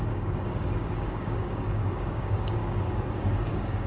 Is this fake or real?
fake